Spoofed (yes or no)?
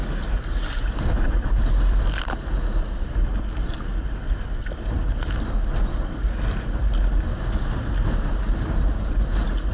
no